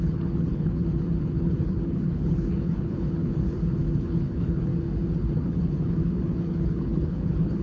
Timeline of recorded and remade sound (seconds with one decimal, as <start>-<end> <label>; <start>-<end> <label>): 0.0-4.7 remade; 4.7-5.2 recorded; 5.2-7.6 remade